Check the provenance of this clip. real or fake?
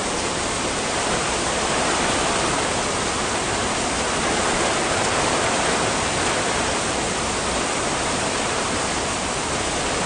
fake